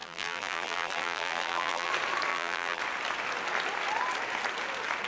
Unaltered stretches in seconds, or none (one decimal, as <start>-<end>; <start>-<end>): 1.9-2.3; 2.8-5.1